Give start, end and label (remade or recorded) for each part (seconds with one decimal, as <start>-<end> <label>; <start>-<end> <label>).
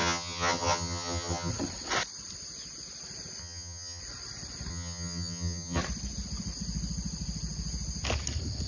0.0-1.5 remade; 1.5-3.4 recorded; 3.4-4.0 remade; 4.0-4.7 recorded; 4.7-5.8 remade; 5.8-8.7 recorded